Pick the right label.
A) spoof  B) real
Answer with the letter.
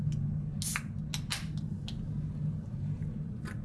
B